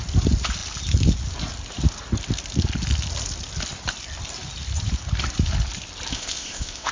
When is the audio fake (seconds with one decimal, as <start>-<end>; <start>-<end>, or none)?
6.1-6.9